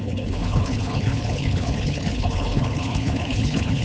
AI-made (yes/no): yes